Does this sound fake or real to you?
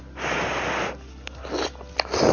real